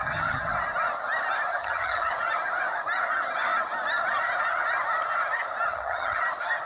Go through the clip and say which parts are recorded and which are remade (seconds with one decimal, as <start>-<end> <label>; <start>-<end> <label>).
0.0-0.5 remade; 0.5-1.6 recorded; 1.6-2.1 remade; 2.1-5.7 recorded; 5.7-6.2 remade; 6.2-6.7 recorded